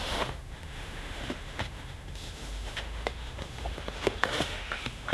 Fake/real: fake